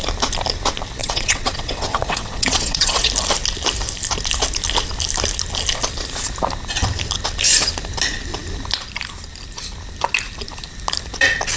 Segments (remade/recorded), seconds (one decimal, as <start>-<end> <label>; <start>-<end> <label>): 0.0-1.0 recorded; 1.0-3.1 remade; 3.1-11.6 recorded